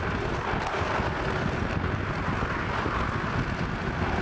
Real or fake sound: real